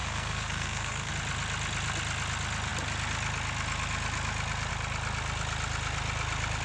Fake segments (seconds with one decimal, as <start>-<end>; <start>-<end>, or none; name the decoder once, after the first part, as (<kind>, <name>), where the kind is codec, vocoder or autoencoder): 0.0-1.1 (codec, SNAC)